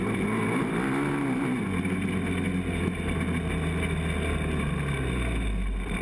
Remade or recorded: recorded